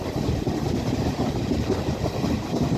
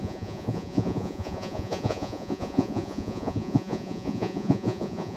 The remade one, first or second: second